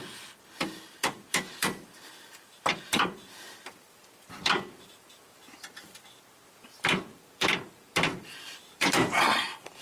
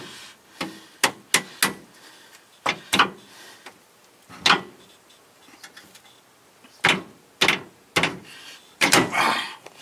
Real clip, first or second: second